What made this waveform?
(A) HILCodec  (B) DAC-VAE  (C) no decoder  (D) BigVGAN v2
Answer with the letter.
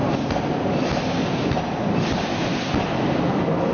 C